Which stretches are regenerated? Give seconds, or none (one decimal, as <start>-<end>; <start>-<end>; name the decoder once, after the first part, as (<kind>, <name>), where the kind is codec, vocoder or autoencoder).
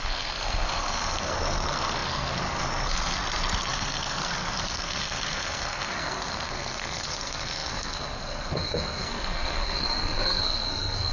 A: 0.0-3.2 (codec, SNAC); 3.7-11.1